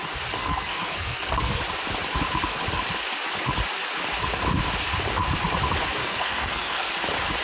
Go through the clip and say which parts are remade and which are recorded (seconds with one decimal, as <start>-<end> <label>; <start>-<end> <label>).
0.0-0.4 recorded; 0.4-1.6 remade; 1.6-6.0 recorded; 6.0-6.9 remade; 6.9-7.4 recorded